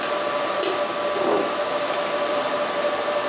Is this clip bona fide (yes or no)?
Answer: yes